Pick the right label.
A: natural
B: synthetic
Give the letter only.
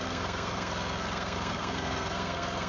B